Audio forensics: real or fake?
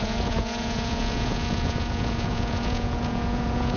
fake